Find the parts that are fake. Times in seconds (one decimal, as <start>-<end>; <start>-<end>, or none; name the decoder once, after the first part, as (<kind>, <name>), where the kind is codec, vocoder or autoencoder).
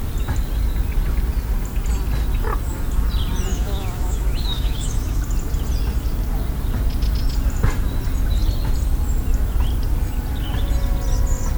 3.5-5.2 (autoencoder, DAC-VAE)